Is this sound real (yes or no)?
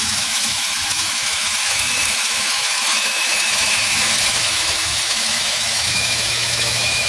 no